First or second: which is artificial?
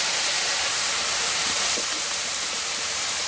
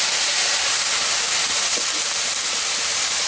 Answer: first